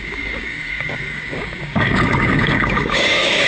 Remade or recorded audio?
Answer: remade